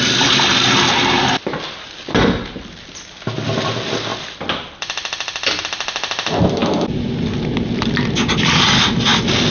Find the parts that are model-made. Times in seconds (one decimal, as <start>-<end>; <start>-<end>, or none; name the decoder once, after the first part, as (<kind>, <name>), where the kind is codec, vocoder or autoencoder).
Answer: none